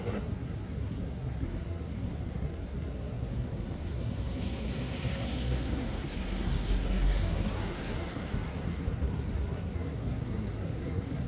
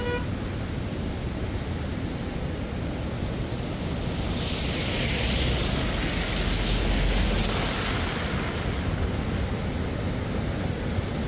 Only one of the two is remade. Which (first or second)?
first